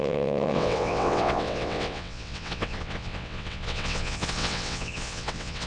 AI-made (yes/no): yes